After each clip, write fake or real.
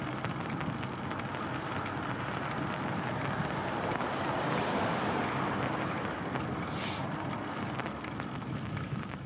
real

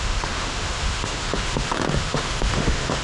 fake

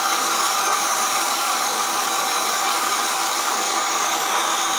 fake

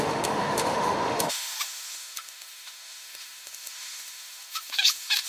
fake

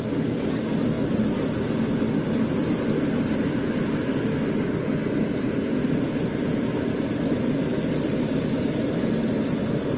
real